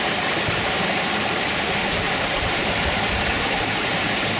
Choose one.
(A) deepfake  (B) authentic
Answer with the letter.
A